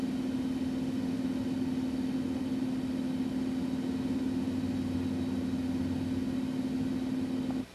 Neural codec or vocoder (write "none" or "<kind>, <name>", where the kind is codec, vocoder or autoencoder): none